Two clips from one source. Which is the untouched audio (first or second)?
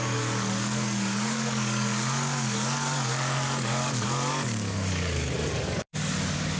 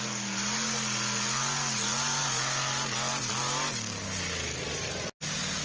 second